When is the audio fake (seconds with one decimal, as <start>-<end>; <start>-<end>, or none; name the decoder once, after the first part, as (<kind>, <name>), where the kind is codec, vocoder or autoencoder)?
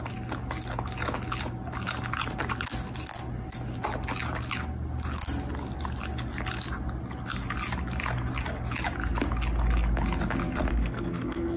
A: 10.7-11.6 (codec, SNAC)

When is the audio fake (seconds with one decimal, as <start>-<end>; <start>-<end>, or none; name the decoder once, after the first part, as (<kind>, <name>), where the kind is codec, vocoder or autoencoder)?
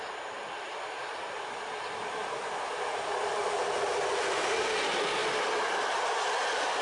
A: 2.2-3.0 (vocoder, BigVGAN v2)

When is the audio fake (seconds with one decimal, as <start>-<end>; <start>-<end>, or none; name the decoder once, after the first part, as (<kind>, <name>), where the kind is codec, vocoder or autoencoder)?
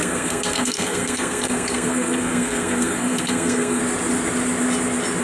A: 0.0-3.8 (codec, SNAC)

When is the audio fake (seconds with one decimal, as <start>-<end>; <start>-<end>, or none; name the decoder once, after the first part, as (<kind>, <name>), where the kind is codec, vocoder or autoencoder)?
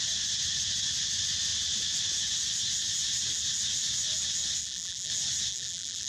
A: 4.6-5.1 (vocoder, BigVGAN v2); 5.5-6.1